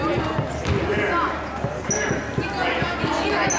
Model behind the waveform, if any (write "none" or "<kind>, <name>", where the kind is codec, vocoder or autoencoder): none